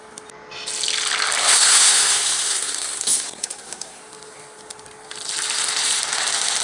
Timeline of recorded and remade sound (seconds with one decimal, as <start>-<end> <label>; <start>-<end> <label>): 0.0-1.4 recorded; 1.4-4.0 remade; 4.0-6.6 recorded